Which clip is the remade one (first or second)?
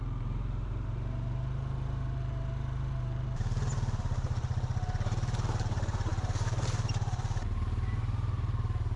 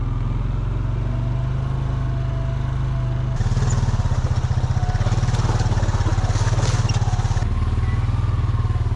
first